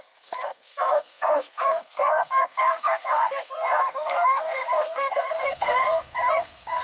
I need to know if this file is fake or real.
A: fake